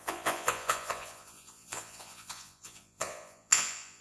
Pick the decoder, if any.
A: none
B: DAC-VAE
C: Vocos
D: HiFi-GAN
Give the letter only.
C